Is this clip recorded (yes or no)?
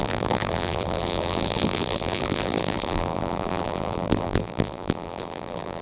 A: no